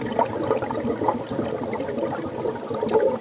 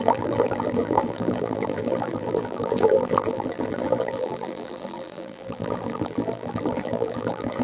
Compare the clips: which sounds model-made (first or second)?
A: second